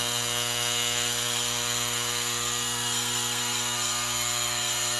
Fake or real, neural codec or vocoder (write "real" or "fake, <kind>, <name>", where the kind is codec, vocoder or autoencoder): fake, codec, SNAC